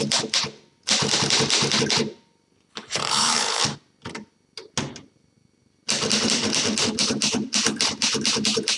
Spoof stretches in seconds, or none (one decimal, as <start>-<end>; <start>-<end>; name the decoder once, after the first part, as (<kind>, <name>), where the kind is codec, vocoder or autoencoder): 2.7-3.6 (codec, HILCodec)